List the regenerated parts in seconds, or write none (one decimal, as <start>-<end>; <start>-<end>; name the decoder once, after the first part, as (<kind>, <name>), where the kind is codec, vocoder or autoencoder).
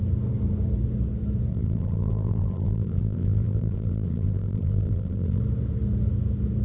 1.5-5.4 (vocoder, BigVGAN v2)